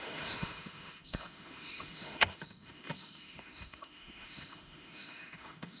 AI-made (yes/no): yes